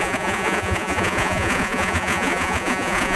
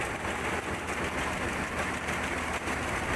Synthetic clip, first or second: first